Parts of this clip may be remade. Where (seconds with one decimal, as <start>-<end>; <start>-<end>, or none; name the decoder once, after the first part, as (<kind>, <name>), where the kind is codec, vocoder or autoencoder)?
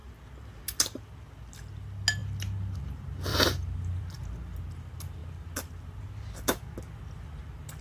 3.3-4.1 (vocoder, BigVGAN v2)